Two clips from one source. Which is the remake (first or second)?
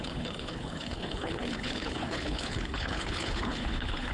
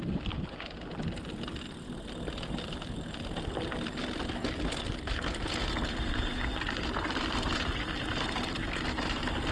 first